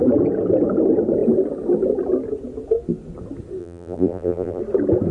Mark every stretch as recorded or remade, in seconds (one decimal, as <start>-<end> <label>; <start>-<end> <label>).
0.0-3.6 recorded; 3.6-4.6 remade; 4.6-5.1 recorded

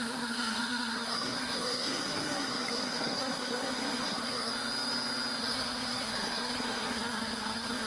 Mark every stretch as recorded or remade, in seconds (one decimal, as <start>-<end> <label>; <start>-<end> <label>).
0.0-4.5 remade; 4.5-5.4 recorded; 5.4-7.9 remade

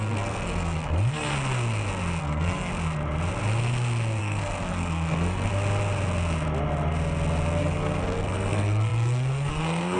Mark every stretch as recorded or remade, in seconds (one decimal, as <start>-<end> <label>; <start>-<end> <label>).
0.0-1.3 remade; 1.3-2.2 recorded; 2.2-2.7 remade; 2.7-4.2 recorded; 4.2-5.5 remade; 5.5-7.6 recorded; 7.6-10.0 remade

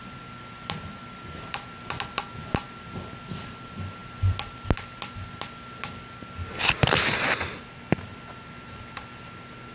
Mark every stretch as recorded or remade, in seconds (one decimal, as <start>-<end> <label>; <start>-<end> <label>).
0.0-9.7 recorded